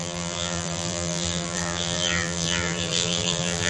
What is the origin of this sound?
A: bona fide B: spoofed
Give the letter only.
B